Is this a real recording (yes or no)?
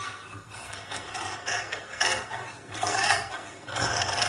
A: no